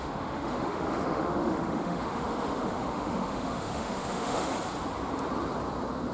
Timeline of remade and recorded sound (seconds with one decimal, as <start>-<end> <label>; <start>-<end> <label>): 0.0-4.5 remade; 4.5-6.1 recorded

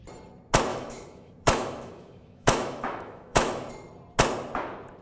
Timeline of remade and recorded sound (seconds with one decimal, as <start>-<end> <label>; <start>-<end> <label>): 0.0-0.7 recorded; 0.7-3.7 remade; 3.7-5.0 recorded

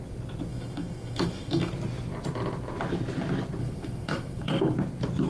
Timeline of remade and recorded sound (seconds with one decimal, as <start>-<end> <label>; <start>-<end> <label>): 0.0-0.5 recorded; 0.5-1.7 remade; 1.7-3.6 recorded; 3.6-4.5 remade; 4.5-5.3 recorded

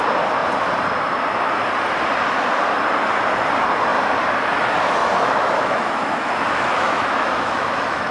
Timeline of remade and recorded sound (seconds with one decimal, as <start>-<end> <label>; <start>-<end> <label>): 0.0-5.0 recorded; 5.0-8.1 remade

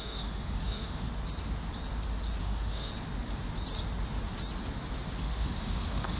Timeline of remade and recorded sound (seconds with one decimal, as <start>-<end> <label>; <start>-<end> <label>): 0.0-1.1 remade; 1.1-2.4 recorded; 2.4-2.9 remade; 2.9-5.2 recorded; 5.2-6.2 remade